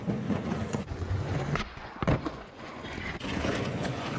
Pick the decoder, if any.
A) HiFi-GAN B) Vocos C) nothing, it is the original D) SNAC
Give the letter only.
B